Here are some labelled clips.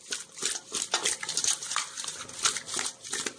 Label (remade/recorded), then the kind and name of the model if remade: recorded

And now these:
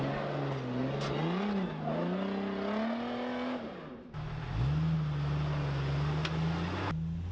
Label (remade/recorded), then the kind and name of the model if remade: recorded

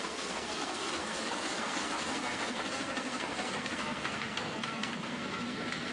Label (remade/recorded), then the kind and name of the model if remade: remade, codec, SNAC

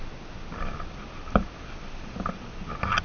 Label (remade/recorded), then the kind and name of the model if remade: recorded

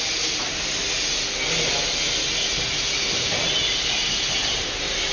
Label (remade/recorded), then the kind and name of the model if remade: recorded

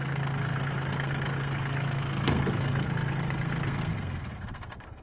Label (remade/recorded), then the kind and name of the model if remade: remade, codec, SNAC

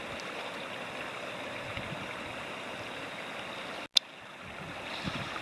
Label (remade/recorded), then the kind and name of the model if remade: recorded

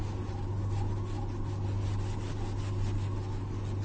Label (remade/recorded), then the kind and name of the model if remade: recorded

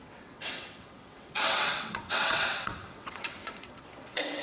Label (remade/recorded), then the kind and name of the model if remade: remade, vocoder, WaveNeXt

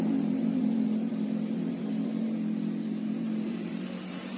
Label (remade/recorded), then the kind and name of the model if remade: remade, vocoder, BigVGAN v2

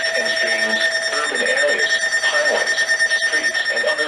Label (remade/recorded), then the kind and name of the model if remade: recorded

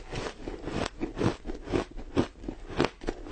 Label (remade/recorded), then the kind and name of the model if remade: recorded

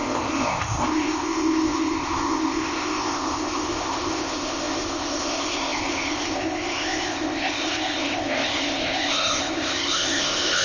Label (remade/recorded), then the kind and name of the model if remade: remade, codec, ZipCodec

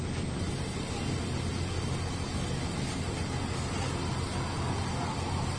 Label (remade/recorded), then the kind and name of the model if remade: recorded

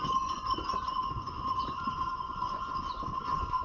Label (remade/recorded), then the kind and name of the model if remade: remade, vocoder, Vocos